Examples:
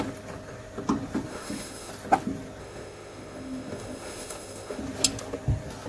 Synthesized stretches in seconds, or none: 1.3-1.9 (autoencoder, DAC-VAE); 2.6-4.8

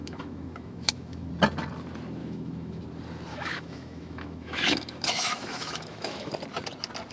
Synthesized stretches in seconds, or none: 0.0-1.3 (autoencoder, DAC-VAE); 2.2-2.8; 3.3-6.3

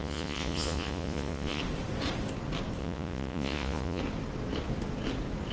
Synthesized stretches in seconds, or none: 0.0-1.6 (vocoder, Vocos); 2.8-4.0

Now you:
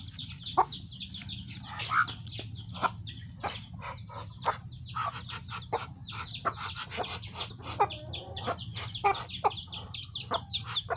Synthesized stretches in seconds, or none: none

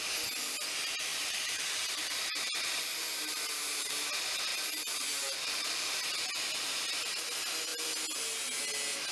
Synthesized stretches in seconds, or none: 1.1-4.1 (vocoder, BigVGAN v2); 4.5-6.0

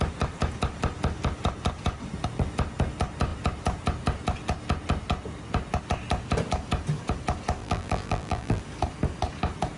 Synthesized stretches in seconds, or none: 7.6-8.6 (vocoder, BigVGAN v2)

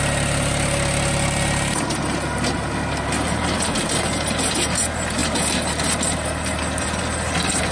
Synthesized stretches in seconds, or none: none

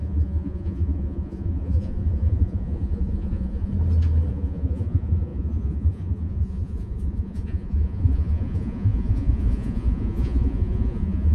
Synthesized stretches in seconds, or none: 0.0-3.7 (vocoder, Vocos); 4.3-11.3